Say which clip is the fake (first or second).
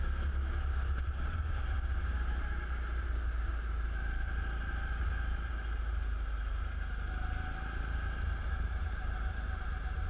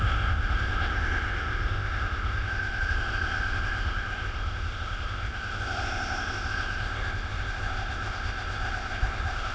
second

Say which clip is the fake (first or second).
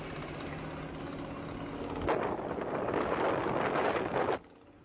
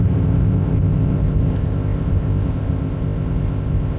second